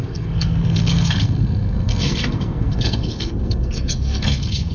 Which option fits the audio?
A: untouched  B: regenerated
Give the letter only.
B